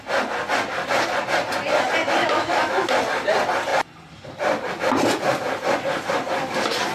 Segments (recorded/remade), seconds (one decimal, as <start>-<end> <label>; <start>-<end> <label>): 0.0-2.2 recorded; 2.2-2.9 remade; 2.9-6.9 recorded